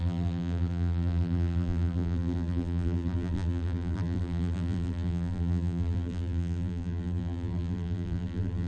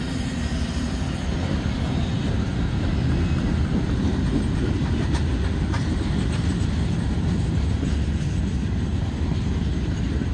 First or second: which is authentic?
second